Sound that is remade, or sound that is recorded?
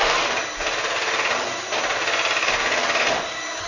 recorded